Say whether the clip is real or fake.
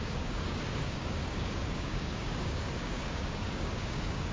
fake